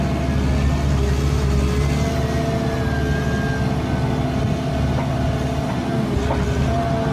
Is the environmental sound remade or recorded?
recorded